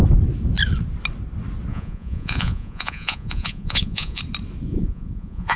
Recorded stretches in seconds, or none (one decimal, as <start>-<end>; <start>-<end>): 0.0-1.7; 4.2-4.7